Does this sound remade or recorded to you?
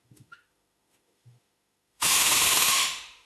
remade